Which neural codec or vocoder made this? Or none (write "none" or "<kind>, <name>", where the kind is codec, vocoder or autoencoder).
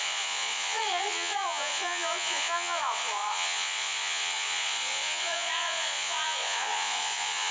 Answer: vocoder, Vocos